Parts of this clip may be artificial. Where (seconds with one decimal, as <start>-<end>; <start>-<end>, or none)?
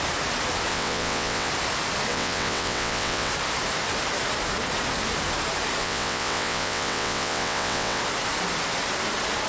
0.7-1.5; 2.1-3.3; 5.8-8.0